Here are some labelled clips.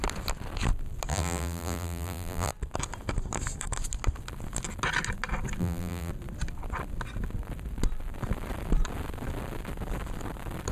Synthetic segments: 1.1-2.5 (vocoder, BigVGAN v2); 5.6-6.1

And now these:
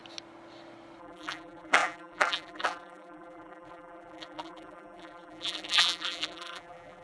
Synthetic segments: 1.0-7.0 (vocoder, BigVGAN v2)

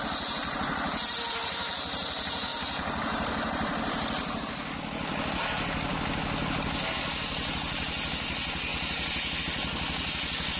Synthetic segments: none

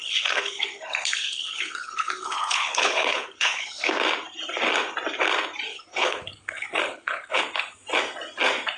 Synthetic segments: 0.0-3.9 (codec, HILCodec); 5.7-7.4

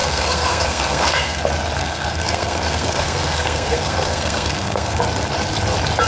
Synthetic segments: 0.0-1.4 (codec, SNAC); 1.8-5.0

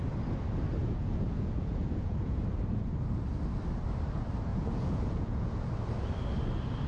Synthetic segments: 0.8-2.4 (vocoder, Vocos); 4.5-5.7

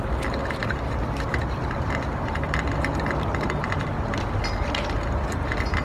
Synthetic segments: 0.6-4.1 (vocoder, BigVGAN v2)

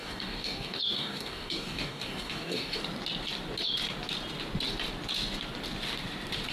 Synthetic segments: 0.0-2.8 (codec, DAC)